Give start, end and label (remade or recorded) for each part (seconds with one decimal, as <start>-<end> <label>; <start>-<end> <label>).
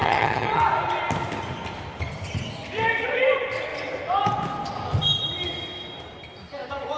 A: 0.0-0.6 remade; 0.6-7.0 recorded